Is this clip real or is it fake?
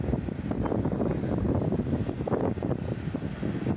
real